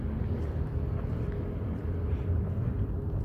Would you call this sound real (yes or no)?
yes